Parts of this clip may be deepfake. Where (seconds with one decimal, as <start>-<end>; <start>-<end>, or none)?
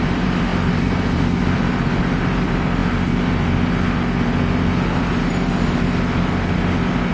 0.0-2.8